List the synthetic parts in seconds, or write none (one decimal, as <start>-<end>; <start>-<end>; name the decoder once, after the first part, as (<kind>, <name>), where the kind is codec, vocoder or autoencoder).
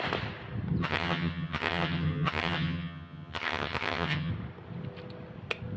0.8-4.3 (vocoder, HiFi-GAN)